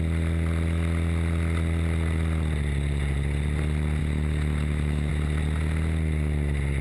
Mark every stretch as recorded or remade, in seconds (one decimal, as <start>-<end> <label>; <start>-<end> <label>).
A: 0.0-4.0 recorded; 4.0-5.1 remade; 5.1-6.8 recorded